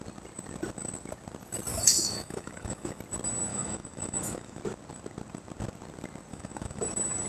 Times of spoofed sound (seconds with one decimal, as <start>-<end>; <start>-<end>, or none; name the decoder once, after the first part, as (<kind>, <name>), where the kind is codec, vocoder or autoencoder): 1.7-3.0 (autoencoder, DAC-VAE); 3.5-4.6; 6.3-6.8